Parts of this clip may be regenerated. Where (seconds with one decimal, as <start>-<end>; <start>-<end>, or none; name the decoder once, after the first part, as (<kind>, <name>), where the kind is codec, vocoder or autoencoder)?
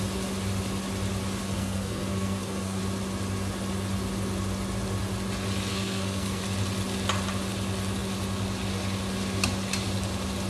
1.4-2.8 (codec, SNAC); 5.7-6.4